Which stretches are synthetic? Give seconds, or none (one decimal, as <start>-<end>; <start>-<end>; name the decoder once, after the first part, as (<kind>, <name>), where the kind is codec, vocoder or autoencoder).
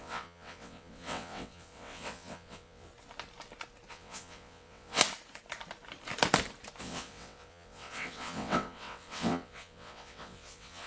0.0-2.9 (vocoder, WaveNeXt); 3.9-5.0; 6.8-10.9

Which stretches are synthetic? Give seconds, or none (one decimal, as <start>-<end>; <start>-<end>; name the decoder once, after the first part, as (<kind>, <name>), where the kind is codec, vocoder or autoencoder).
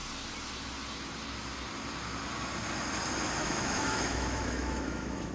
3.4-5.3 (autoencoder, DAC-VAE)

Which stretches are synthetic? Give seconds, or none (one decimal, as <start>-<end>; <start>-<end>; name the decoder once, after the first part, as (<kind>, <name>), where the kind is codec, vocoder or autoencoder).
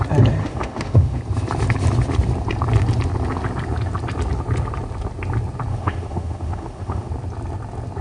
0.4-1.2 (autoencoder, DAC-VAE); 5.7-7.1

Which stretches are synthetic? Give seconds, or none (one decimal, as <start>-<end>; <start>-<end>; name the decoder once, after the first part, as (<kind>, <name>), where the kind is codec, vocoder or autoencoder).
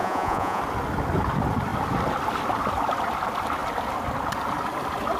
0.0-0.6 (vocoder, Vocos)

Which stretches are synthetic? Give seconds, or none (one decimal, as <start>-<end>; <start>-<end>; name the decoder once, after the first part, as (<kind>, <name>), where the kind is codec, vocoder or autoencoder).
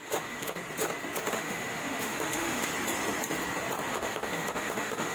0.0-0.6 (autoencoder, DAC-VAE); 1.2-2.7; 3.9-5.1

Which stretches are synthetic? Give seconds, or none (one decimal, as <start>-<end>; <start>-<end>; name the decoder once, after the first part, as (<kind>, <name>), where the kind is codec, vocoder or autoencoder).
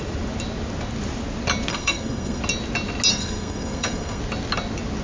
1.7-2.4 (codec, SNAC); 3.1-4.2